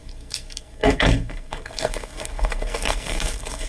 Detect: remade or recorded remade